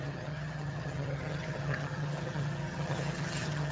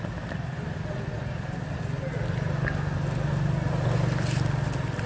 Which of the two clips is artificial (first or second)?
first